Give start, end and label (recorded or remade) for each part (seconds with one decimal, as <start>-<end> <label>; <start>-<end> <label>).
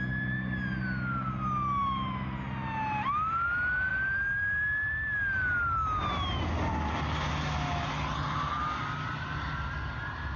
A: 0.0-10.4 recorded